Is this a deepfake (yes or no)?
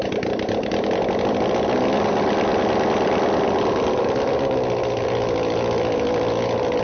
no